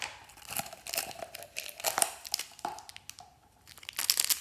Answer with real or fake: real